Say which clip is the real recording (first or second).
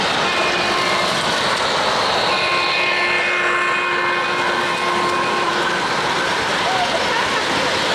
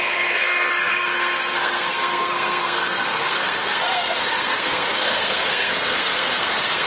first